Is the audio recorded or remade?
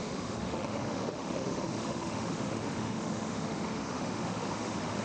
remade